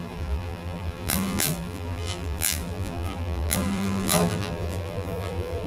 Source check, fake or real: fake